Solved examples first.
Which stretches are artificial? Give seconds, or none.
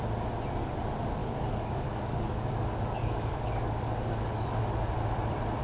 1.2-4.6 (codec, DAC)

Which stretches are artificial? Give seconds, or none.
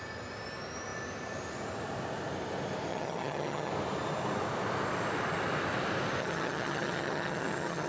2.9-3.7 (vocoder, HiFi-GAN); 6.2-7.9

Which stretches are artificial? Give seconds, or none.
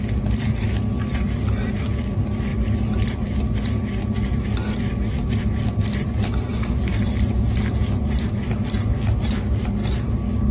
6.5-8.4 (vocoder, BigVGAN v2)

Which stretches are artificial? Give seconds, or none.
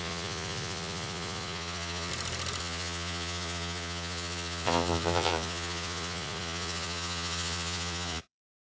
0.0-2.1 (vocoder, Vocos); 2.6-8.6